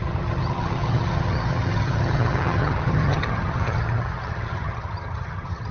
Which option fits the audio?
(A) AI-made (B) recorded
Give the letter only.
A